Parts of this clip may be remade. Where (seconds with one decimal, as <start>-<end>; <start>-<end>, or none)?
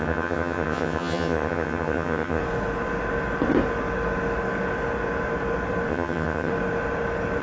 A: 0.0-2.4; 5.9-6.5